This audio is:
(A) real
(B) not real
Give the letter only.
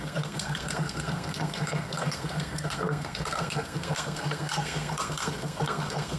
B